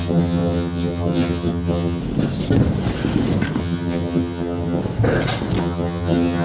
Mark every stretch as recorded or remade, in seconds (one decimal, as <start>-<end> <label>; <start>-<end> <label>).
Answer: 0.0-2.0 remade; 2.0-3.6 recorded; 3.6-4.8 remade; 4.8-5.6 recorded; 5.6-6.4 remade